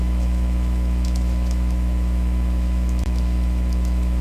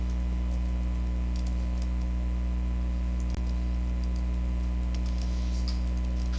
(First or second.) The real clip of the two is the second